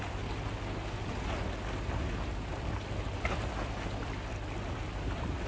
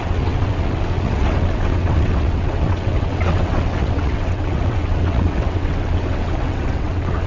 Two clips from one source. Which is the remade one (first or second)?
second